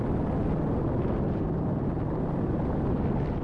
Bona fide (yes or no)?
yes